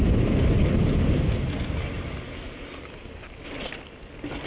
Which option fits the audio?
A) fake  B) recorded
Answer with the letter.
B